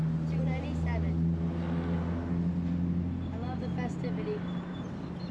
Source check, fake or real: real